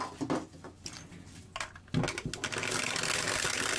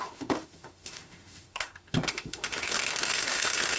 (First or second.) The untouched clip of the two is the first